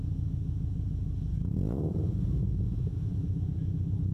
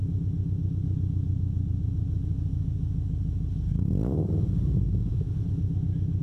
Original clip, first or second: second